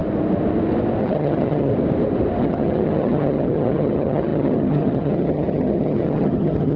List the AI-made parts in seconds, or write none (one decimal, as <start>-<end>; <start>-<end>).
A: 1.0-1.7; 2.4-6.8